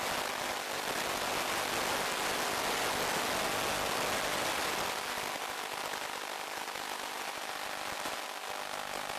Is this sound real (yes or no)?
yes